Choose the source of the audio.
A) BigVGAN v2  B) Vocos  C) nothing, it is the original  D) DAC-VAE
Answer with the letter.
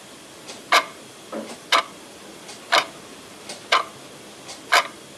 C